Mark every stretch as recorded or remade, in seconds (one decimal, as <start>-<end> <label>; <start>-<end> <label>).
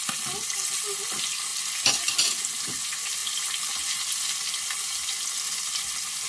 0.0-6.3 recorded